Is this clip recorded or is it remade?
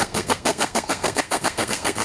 remade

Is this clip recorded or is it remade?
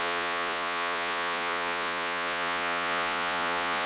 remade